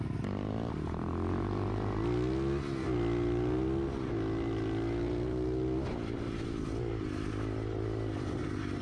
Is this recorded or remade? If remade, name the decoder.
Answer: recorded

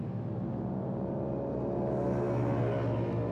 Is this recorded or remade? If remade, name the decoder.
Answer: recorded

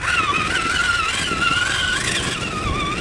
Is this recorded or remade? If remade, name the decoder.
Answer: recorded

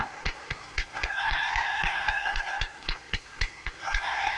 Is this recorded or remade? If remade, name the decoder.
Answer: remade, codec, SNAC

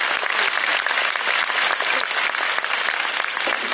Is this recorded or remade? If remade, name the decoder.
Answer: recorded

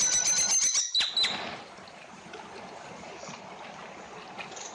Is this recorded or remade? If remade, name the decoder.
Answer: recorded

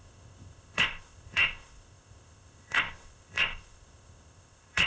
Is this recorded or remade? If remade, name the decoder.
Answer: remade, codec, ZipCodec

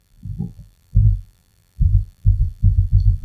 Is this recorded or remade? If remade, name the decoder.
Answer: remade, vocoder, BigVGAN v2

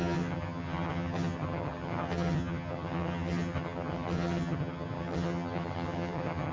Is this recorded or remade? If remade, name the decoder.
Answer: remade, vocoder, HiFi-GAN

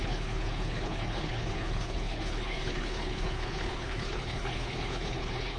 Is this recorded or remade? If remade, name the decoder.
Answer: remade, codec, HILCodec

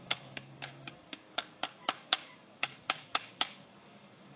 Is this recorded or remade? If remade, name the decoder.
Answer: remade, codec, DAC